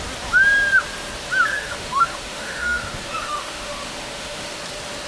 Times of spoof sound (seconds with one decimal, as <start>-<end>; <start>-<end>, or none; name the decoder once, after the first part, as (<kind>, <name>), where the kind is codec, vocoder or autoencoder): 1.5-4.6 (autoencoder, DAC-VAE)